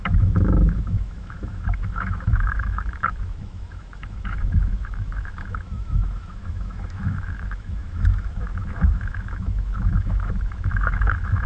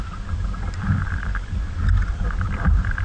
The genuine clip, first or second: second